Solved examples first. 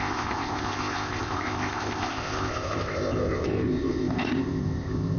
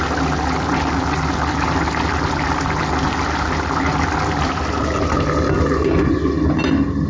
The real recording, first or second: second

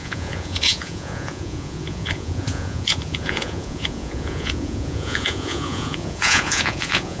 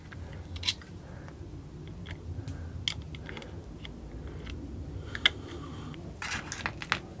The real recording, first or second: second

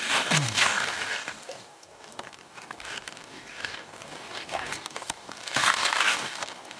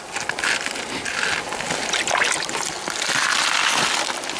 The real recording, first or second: second